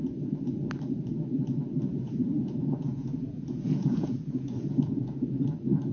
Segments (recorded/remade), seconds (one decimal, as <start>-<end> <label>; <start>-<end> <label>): 0.0-1.9 recorded; 1.9-5.4 remade; 5.4-5.9 recorded